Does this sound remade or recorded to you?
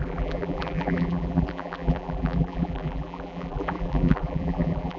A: remade